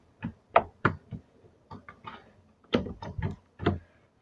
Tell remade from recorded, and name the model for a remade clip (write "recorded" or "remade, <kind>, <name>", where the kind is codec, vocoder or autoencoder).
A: remade, vocoder, BigVGAN v2